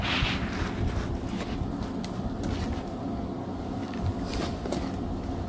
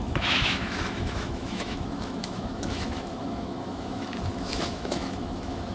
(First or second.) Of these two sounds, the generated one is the second